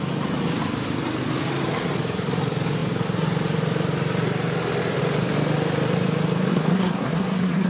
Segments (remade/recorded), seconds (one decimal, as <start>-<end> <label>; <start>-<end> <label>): 0.0-6.5 recorded; 6.5-7.7 remade